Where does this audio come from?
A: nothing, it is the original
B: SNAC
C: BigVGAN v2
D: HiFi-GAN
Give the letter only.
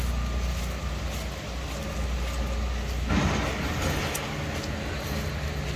A